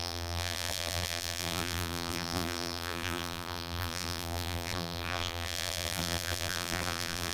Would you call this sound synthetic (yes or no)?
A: yes